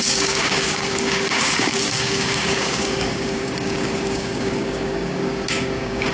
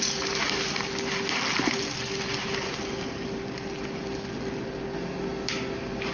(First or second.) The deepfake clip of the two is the first